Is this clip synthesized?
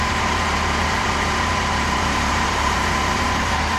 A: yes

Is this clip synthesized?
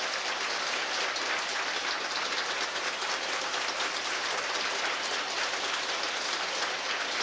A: yes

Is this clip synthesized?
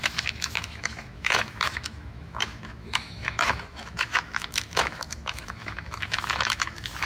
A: yes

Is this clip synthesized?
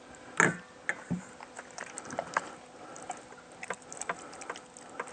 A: no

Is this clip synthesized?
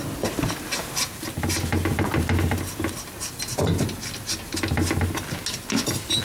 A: no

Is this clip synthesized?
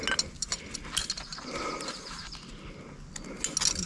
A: no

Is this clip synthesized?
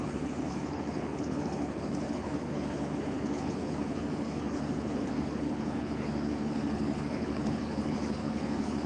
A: yes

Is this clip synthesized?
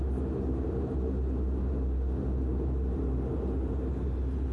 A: no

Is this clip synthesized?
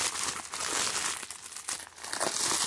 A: no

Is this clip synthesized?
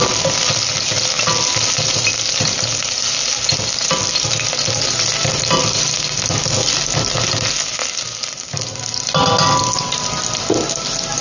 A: no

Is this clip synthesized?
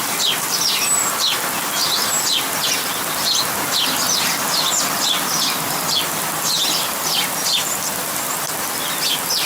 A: no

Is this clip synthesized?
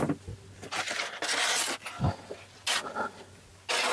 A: no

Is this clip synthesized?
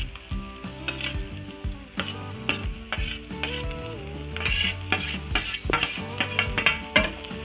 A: no